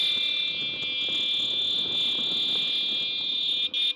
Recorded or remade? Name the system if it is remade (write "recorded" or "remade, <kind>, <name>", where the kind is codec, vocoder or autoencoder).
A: recorded